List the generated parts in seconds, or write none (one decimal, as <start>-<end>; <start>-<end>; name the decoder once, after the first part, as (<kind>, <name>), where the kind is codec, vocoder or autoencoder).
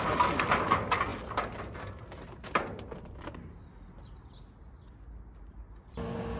none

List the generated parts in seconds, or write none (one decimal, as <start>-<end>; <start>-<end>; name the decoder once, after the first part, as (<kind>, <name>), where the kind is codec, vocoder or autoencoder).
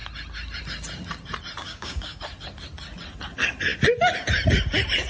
1.6-2.2 (codec, DAC)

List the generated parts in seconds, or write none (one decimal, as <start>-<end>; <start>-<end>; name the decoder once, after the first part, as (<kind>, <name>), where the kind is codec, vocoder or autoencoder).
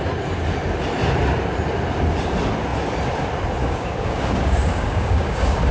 3.6-5.7 (codec, DAC)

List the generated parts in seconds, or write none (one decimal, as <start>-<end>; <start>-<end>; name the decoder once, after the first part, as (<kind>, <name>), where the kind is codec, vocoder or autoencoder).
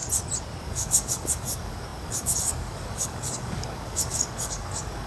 0.6-5.1 (codec, DAC)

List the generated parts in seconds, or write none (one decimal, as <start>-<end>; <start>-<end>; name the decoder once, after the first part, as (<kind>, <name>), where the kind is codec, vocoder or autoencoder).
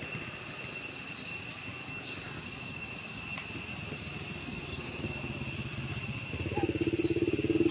1.7-3.2 (codec, DAC); 4.4-5.2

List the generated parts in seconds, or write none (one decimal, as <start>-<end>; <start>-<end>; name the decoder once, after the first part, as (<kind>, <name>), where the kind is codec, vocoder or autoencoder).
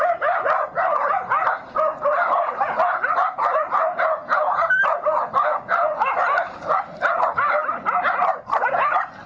none